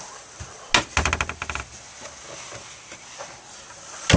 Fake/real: real